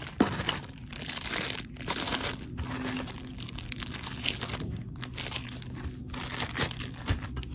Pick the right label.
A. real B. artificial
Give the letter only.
A